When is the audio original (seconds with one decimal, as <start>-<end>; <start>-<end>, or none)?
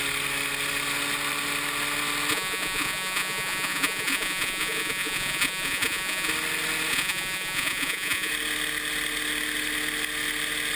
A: 0.0-2.3; 6.3-6.9; 8.3-10.8